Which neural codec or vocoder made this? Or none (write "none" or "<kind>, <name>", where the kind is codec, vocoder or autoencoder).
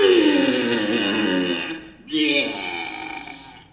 none